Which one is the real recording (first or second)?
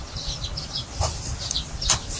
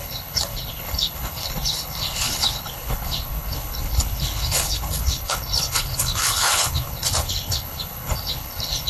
first